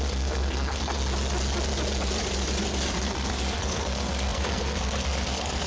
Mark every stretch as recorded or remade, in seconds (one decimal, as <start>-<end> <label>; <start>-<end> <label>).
0.0-1.0 remade; 1.0-3.0 recorded; 3.0-5.7 remade